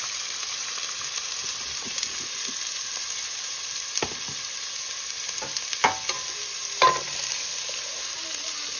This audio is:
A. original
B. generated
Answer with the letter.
A